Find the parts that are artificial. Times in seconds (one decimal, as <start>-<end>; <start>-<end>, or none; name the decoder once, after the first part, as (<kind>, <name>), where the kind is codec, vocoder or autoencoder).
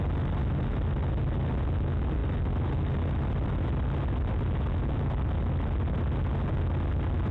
none